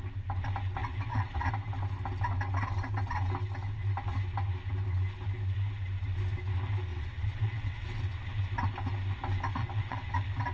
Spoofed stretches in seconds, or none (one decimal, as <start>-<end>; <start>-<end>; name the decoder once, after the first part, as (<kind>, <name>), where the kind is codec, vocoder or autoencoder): 0.8-1.5 (vocoder, WaveNeXt); 6.9-8.4; 9.6-10.1